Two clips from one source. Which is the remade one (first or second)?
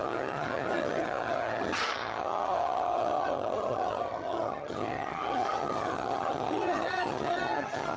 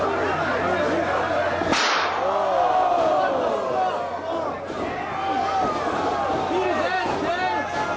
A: first